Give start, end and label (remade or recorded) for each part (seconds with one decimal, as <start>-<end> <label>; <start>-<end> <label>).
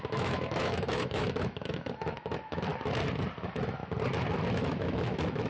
0.0-2.7 remade; 2.7-3.4 recorded; 3.4-3.8 remade; 3.8-4.5 recorded; 4.5-5.5 remade